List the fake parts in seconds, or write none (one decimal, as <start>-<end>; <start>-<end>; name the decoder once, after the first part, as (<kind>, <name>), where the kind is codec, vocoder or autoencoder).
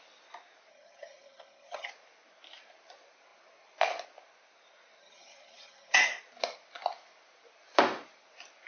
0.7-1.9 (vocoder, HiFi-GAN); 5.0-6.1